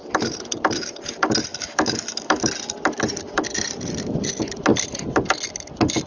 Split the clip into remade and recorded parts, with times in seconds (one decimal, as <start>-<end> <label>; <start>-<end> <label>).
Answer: 0.0-1.5 recorded; 1.5-2.4 remade; 2.4-6.1 recorded